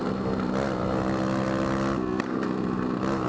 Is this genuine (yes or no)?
yes